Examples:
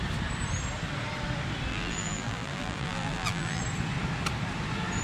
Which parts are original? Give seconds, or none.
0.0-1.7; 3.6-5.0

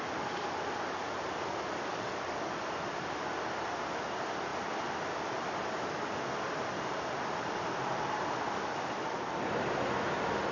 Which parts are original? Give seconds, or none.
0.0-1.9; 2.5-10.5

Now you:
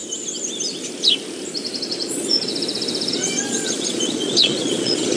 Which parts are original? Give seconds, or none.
0.0-1.8; 2.5-3.1